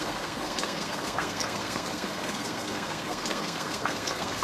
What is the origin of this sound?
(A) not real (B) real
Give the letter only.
A